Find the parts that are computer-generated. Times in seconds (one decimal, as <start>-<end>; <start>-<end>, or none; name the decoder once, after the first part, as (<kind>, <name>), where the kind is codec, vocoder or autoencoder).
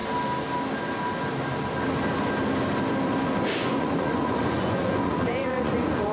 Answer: 3.6-6.1 (vocoder, Vocos)